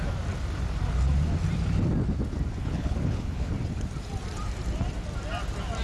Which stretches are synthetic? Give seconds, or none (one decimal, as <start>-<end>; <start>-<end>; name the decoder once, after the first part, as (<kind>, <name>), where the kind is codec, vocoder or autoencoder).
2.6-3.5 (codec, HILCodec)

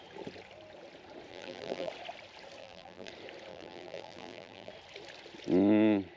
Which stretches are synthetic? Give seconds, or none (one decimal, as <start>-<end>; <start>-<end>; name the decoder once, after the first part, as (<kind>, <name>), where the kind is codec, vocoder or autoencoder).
1.3-1.9 (vocoder, BigVGAN v2); 2.6-3.1; 3.5-4.7